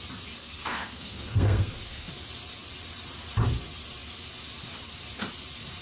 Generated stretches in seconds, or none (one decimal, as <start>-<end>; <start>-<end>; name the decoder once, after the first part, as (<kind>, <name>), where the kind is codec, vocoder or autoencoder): 0.4-2.1 (codec, SNAC)